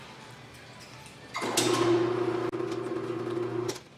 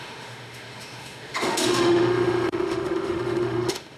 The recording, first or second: first